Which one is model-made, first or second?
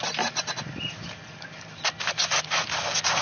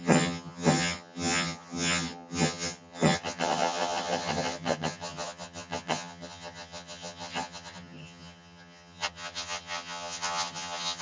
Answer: second